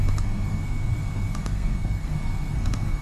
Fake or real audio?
fake